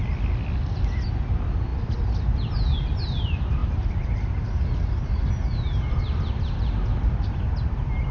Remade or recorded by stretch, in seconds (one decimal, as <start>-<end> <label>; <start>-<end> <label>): 0.0-8.1 recorded